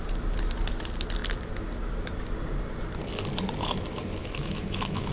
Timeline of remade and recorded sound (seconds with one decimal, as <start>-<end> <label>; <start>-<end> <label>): 0.0-4.2 recorded; 4.2-5.1 remade